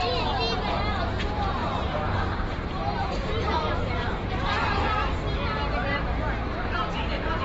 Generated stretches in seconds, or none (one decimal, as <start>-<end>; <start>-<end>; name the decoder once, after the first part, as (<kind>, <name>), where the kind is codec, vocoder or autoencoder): 1.6-4.4 (vocoder, BigVGAN v2)